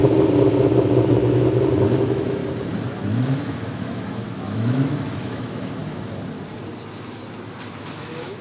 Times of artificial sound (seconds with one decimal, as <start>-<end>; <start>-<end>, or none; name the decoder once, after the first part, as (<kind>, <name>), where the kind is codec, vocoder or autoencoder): 2.0-2.4 (autoencoder, DAC-VAE); 3.0-5.8; 7.7-8.4